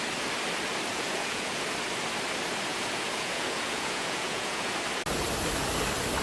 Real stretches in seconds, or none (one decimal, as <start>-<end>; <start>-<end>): 0.0-0.9; 1.6-2.7; 4.7-6.2